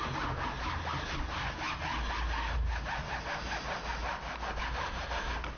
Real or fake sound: real